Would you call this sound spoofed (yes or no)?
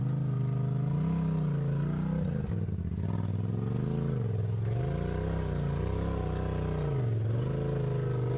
no